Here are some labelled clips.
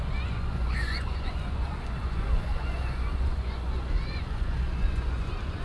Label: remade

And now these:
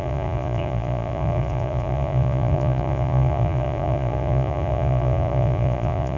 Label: remade